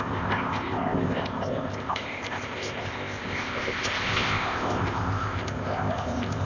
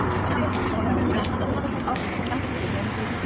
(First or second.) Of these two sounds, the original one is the second